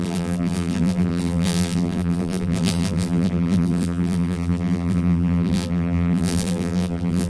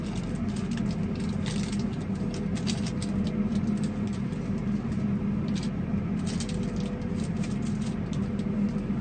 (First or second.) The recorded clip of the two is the second